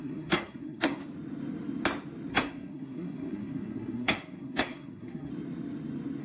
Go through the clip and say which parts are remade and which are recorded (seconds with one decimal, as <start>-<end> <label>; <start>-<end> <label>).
0.0-1.0 remade; 1.0-2.3 recorded; 2.3-5.3 remade; 5.3-6.2 recorded